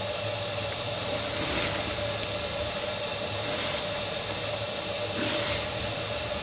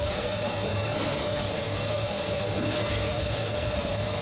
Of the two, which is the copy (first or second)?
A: second